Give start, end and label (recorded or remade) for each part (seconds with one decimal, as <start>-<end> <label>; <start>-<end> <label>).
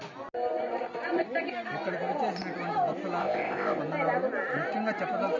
0.0-3.2 recorded; 3.2-3.8 remade; 3.8-5.4 recorded